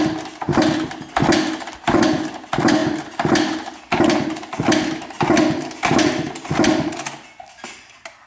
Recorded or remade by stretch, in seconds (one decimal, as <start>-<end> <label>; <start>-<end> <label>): 0.0-8.3 recorded